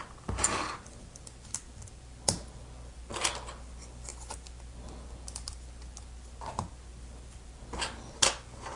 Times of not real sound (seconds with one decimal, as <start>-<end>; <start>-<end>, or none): none